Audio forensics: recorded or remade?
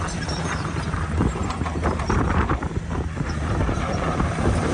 remade